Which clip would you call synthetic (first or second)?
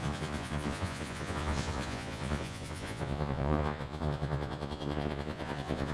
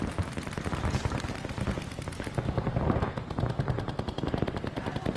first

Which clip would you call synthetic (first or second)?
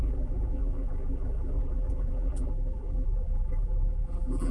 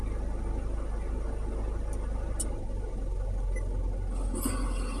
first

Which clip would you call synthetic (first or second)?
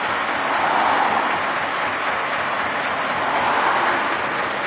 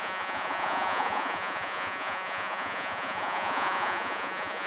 second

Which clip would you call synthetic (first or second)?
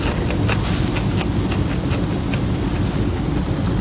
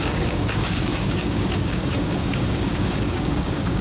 second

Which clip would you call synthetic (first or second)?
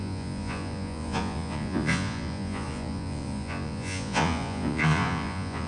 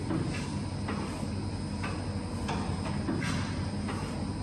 first